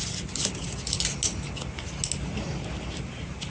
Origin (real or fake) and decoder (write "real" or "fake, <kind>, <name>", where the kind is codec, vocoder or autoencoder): real